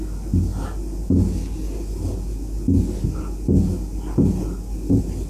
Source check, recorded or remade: recorded